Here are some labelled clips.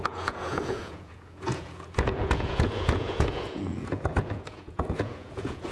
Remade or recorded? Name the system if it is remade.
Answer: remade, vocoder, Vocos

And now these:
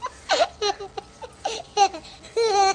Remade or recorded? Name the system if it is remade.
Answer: recorded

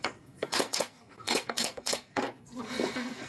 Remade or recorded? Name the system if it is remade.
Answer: remade, codec, SNAC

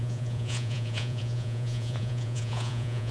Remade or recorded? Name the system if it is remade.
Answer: remade, vocoder, Vocos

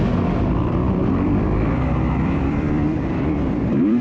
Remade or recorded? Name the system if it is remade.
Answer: remade, vocoder, BigVGAN v2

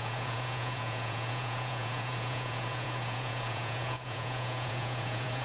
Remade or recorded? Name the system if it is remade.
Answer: remade, vocoder, Vocos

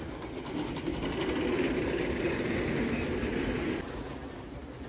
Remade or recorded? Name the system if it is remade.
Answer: recorded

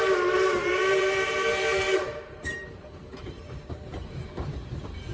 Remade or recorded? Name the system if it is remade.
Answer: remade, vocoder, BigVGAN v2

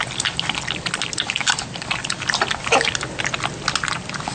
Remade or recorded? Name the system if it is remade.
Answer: recorded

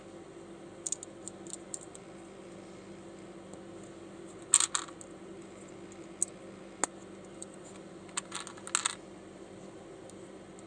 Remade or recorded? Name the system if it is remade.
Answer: recorded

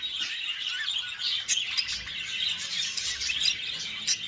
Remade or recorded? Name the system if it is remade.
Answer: recorded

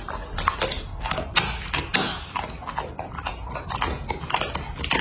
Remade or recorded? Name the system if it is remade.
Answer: recorded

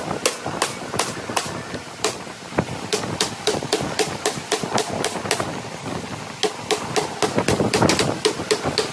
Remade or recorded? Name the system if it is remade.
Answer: recorded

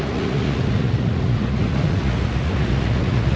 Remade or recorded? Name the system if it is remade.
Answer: remade, vocoder, Vocos